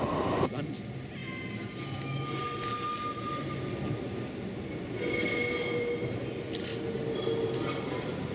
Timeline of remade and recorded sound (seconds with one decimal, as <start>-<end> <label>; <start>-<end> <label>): 0.0-8.3 recorded